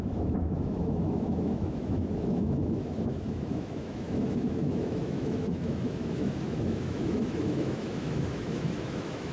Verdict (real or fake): fake